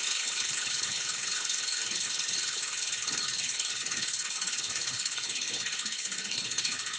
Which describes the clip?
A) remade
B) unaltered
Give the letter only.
A